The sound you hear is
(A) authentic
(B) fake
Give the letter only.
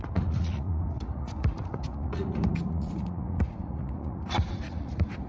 B